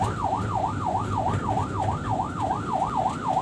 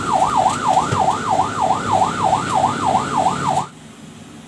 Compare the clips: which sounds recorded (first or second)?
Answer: second